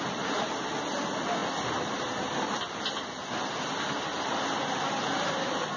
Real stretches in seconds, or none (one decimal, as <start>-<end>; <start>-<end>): 0.0-5.8